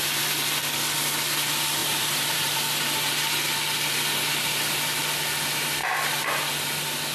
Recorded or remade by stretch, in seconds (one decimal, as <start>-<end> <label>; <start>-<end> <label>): 0.0-1.8 recorded; 1.8-2.6 remade; 2.6-7.1 recorded